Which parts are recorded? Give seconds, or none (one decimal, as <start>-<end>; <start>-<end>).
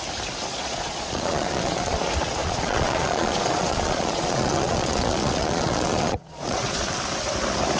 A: 0.0-0.5; 2.0-2.4; 6.9-7.8